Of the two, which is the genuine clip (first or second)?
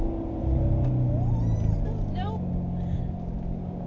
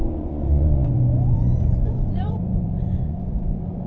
first